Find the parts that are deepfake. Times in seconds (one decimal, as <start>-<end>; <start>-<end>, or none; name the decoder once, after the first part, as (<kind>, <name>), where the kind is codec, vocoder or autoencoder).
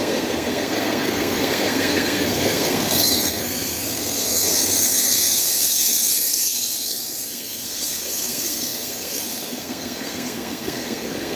0.0-11.4 (codec, SNAC)